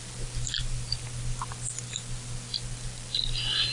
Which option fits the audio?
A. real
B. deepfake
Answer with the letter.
A